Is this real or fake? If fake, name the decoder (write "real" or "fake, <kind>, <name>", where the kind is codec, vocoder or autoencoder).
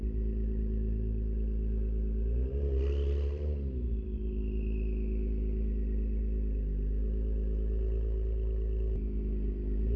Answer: real